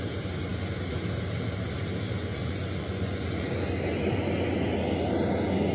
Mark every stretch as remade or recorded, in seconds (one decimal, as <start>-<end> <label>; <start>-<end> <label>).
0.0-2.3 recorded; 2.3-3.5 remade; 3.5-5.7 recorded